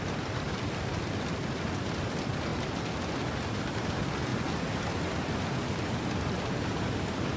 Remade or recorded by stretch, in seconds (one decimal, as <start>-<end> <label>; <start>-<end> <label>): 0.0-2.5 remade; 2.5-3.5 recorded; 3.5-7.4 remade